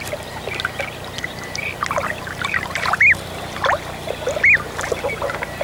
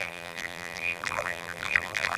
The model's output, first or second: second